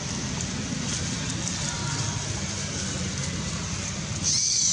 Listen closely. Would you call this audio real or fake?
real